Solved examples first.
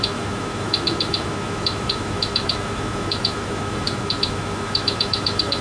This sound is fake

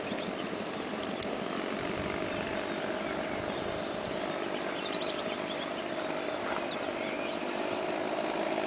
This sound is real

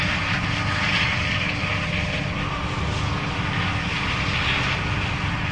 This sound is real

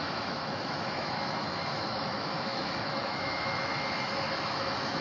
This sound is fake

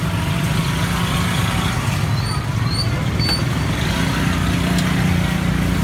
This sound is real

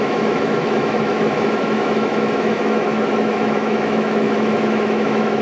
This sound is fake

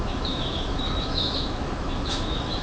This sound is fake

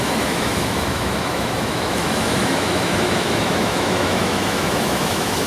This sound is fake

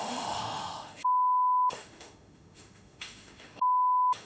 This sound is fake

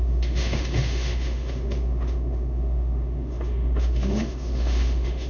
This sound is fake